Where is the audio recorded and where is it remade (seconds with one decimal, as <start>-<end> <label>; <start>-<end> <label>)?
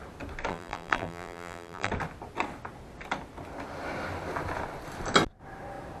0.0-0.5 recorded; 0.5-1.9 remade; 1.9-6.0 recorded